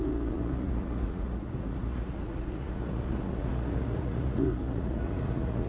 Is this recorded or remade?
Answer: remade